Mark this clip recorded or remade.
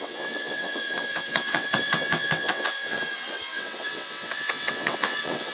remade